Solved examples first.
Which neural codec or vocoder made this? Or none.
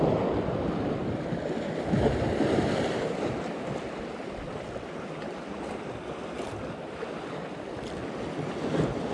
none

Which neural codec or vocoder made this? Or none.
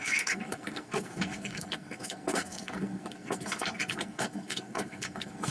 codec, SNAC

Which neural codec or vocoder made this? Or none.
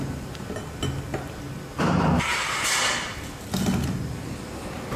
none